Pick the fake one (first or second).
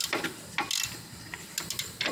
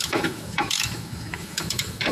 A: second